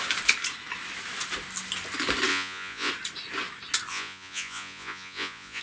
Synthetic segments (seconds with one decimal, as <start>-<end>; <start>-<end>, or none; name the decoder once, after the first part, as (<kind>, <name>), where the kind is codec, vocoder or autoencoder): 2.3-2.9 (vocoder, Vocos); 3.9-5.6